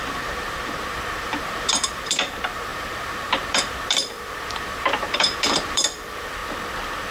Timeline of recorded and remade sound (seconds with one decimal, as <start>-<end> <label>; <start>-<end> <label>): 0.0-6.4 remade; 6.4-7.1 recorded